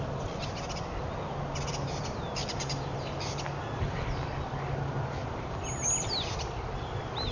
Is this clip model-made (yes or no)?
no